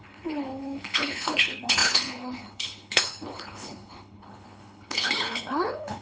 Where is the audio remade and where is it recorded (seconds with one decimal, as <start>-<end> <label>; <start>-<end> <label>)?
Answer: 0.0-6.0 remade